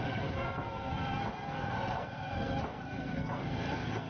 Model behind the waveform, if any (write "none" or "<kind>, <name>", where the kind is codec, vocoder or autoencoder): codec, SNAC